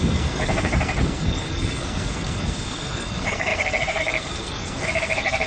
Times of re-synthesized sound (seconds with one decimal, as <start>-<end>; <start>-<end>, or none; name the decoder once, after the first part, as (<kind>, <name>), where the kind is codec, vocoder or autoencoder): 0.0-5.5 (codec, SNAC)